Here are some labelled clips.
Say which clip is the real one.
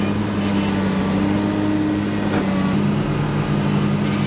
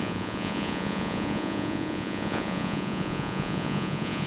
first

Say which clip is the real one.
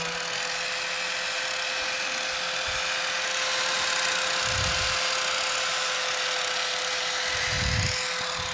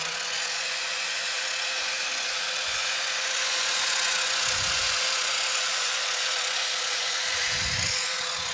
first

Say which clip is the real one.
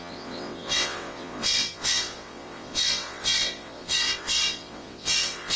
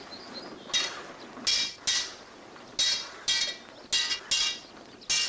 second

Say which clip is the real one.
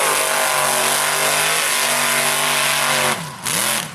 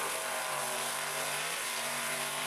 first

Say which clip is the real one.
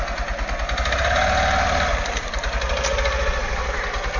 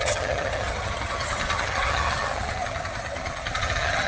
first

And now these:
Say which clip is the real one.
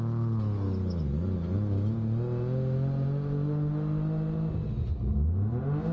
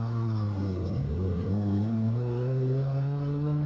first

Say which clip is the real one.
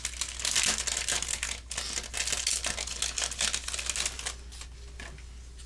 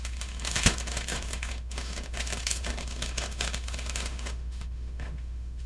first